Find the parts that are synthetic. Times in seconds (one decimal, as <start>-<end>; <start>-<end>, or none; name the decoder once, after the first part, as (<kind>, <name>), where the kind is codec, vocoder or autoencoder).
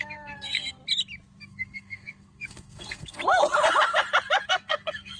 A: 0.0-0.8 (codec, SNAC); 1.4-3.2; 4.5-5.2